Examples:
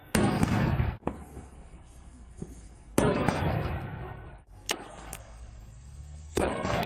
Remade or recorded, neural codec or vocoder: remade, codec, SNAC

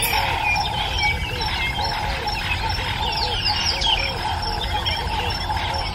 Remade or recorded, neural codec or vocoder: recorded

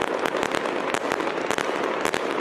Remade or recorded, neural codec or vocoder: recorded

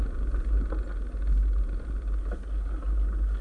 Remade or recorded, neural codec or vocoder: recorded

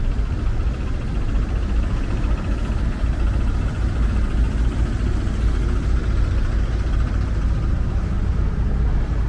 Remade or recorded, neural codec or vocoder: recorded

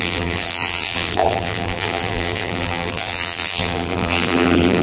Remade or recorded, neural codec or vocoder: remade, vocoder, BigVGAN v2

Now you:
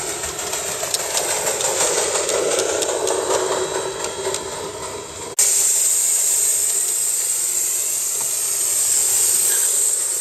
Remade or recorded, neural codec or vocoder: recorded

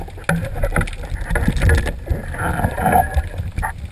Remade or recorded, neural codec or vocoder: recorded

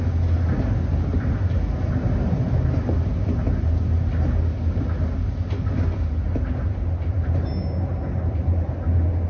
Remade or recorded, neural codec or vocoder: recorded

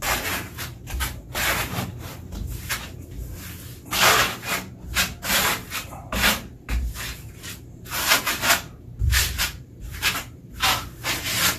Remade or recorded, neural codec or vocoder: remade, vocoder, BigVGAN v2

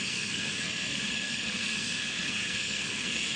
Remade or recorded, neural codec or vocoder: remade, codec, SNAC